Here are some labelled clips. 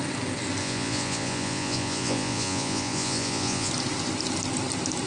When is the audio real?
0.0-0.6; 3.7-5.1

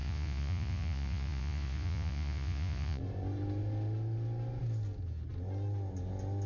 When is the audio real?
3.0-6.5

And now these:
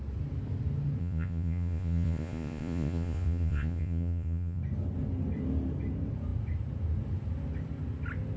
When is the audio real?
0.0-1.0; 4.6-8.4

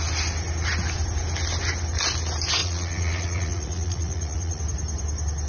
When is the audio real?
0.0-2.6; 4.6-5.5

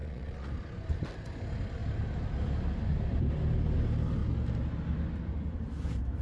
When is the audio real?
0.5-6.2

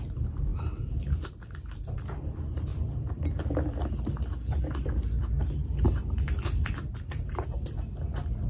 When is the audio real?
0.0-8.5